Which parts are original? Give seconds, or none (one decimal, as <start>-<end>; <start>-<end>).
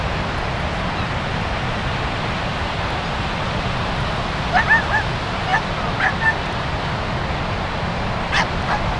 0.0-9.0